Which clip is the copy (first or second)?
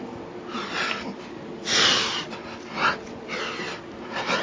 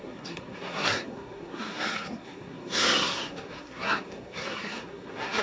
second